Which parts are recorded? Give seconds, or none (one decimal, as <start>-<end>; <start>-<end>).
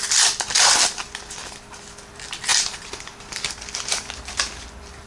0.0-5.1